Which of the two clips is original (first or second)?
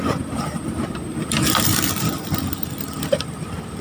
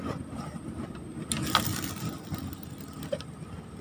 second